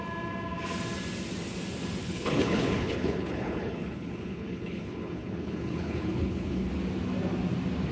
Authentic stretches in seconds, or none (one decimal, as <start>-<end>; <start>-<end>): 0.0-2.0; 6.7-7.9